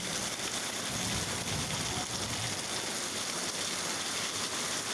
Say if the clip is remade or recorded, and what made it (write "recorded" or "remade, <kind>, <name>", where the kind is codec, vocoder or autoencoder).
recorded